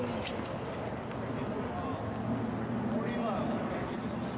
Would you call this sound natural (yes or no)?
yes